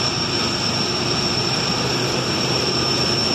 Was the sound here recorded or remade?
remade